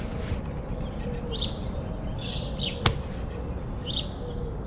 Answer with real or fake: real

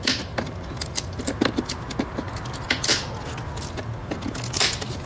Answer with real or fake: real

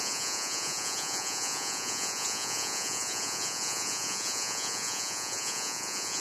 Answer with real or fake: fake